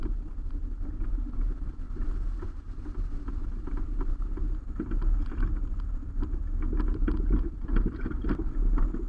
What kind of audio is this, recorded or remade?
recorded